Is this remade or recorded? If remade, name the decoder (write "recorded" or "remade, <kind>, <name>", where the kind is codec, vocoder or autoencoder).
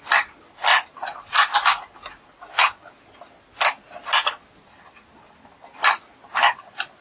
recorded